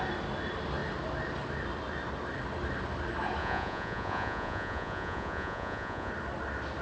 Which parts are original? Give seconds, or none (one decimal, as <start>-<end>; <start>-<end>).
0.0-3.4; 6.1-6.8